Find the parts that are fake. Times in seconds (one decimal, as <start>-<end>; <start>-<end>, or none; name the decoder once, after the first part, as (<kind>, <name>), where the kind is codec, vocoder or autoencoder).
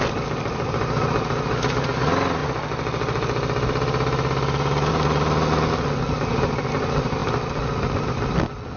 none